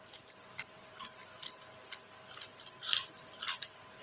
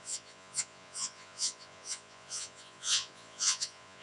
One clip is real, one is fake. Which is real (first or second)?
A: first